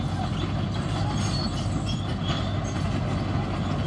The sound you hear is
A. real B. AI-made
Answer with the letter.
A